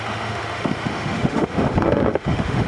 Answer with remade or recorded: remade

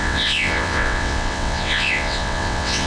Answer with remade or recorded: remade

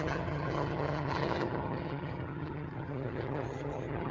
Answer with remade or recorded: remade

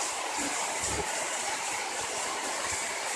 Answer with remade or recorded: remade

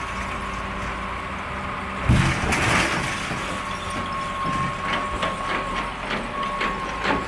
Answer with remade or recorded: recorded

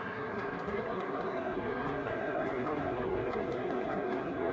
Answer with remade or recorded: remade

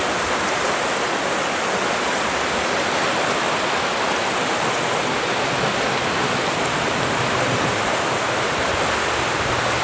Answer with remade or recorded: recorded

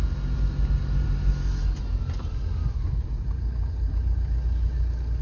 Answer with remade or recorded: recorded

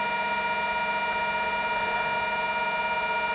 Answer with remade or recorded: recorded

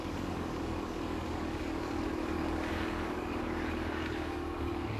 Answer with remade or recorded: remade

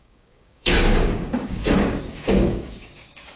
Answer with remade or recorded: remade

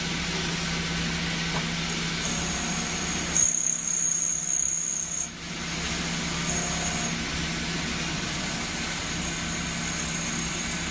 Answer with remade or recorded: recorded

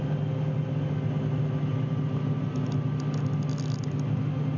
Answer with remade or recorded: recorded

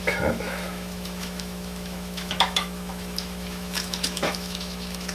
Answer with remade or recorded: remade